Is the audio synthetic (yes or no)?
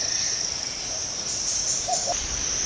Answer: no